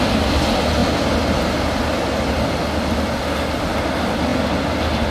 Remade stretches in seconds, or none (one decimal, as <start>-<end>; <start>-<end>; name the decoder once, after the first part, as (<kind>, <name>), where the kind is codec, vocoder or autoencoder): none